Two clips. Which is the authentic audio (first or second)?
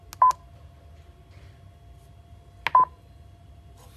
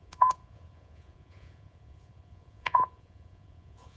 first